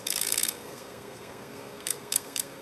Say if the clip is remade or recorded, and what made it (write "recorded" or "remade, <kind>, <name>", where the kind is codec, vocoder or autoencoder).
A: remade, codec, SNAC